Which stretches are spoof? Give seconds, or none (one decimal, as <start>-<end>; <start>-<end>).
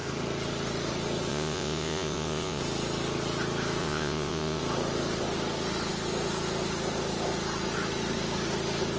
1.3-2.6; 3.8-4.6